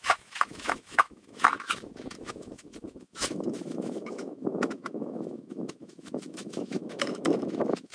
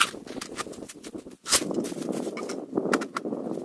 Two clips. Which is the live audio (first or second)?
second